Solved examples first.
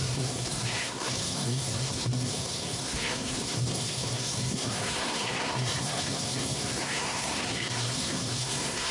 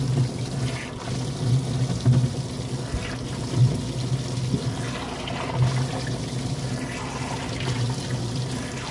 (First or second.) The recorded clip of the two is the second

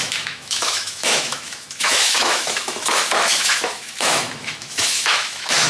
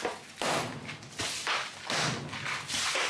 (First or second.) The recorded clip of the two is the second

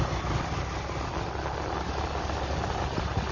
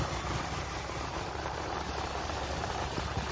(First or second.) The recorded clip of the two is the first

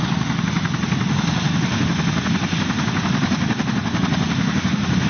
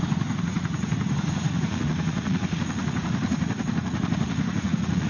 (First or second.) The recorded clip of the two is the first